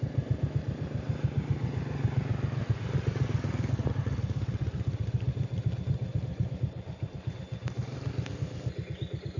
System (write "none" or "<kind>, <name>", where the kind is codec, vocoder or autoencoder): none